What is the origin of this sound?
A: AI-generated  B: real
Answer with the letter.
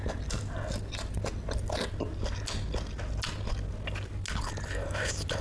B